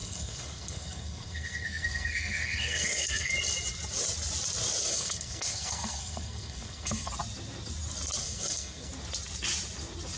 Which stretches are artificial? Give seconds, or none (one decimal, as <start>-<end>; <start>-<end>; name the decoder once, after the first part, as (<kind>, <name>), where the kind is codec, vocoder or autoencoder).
0.0-3.3 (codec, SNAC); 4.8-7.1; 8.2-8.9